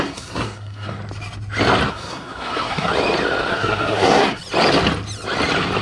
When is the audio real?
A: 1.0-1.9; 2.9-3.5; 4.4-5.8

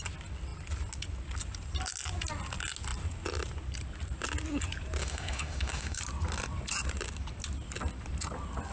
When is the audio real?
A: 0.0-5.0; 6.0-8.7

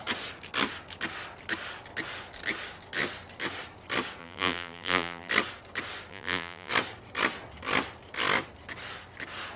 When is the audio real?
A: 0.0-4.2; 5.3-6.1; 6.7-9.6

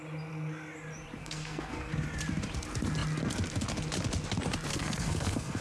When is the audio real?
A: 0.0-1.2; 1.9-4.7

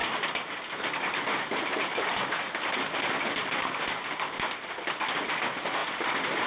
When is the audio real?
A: 0.0-6.5